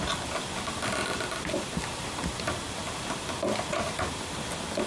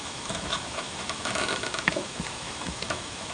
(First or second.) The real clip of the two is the first